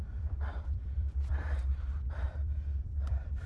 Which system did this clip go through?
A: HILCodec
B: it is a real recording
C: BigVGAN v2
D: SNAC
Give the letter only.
C